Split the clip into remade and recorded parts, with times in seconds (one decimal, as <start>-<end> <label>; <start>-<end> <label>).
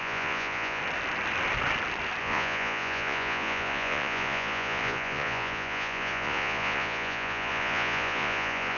0.0-0.8 remade; 0.8-2.2 recorded; 2.2-8.8 remade